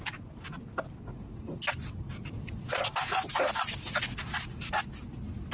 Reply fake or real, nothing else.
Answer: real